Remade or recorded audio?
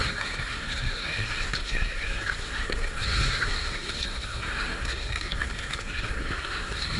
remade